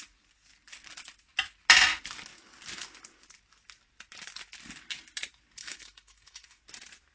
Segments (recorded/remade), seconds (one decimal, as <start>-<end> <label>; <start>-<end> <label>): 0.0-5.6 recorded; 5.6-6.6 remade; 6.6-7.1 recorded